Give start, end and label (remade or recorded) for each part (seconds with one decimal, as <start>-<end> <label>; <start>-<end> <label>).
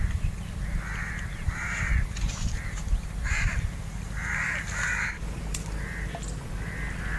0.0-1.3 recorded; 1.3-5.1 remade; 5.1-7.2 recorded